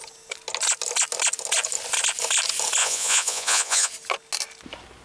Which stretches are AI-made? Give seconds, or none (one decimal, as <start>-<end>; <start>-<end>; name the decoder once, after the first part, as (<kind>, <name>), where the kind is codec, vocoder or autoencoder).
2.8-3.9 (vocoder, Vocos)